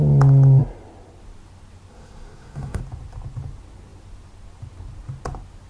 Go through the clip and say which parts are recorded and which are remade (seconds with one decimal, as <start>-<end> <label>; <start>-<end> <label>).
0.0-1.9 recorded; 1.9-2.8 remade; 2.8-5.7 recorded

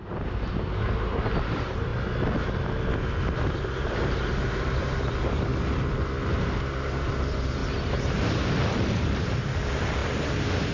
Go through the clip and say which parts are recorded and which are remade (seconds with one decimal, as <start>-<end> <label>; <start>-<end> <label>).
0.0-1.9 remade; 1.9-3.5 recorded; 3.5-5.5 remade; 5.5-6.3 recorded; 6.3-10.7 remade

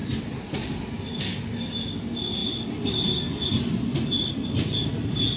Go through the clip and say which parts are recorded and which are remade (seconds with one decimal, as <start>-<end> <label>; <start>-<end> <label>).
0.0-5.4 recorded

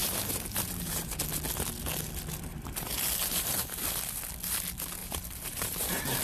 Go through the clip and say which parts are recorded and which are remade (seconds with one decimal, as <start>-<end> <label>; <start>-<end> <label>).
0.0-1.2 remade; 1.2-2.5 recorded; 2.5-3.8 remade; 3.8-5.0 recorded; 5.0-6.2 remade

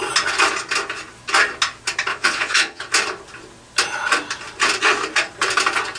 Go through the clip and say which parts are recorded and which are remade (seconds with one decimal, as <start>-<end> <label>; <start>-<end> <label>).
0.0-2.1 recorded; 2.1-2.8 remade; 2.8-6.0 recorded

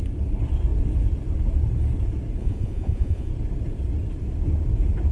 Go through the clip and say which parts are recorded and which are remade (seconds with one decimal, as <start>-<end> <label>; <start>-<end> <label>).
0.0-2.4 recorded; 2.4-3.3 remade; 3.3-5.1 recorded